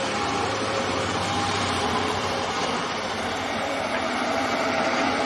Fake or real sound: fake